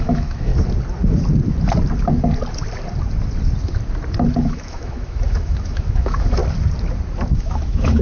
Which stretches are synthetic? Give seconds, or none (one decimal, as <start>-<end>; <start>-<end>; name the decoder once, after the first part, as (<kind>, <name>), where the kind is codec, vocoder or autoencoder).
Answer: 0.0-0.5 (autoencoder, DAC-VAE); 4.4-6.4; 7.3-8.0